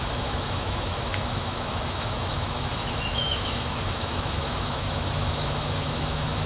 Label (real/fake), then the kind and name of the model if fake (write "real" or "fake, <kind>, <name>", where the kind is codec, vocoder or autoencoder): fake, autoencoder, DAC-VAE